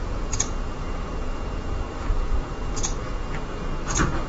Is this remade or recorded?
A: remade